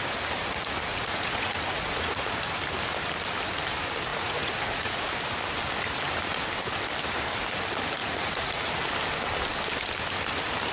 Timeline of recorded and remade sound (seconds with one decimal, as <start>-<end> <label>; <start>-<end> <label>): 0.0-0.9 recorded; 0.9-2.4 remade; 2.4-4.1 recorded; 4.1-5.0 remade; 5.0-8.0 recorded; 8.0-8.7 remade; 8.7-10.7 recorded